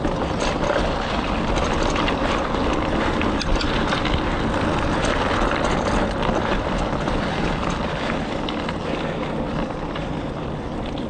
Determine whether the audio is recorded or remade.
recorded